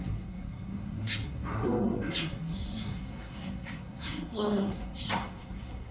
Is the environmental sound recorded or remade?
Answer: remade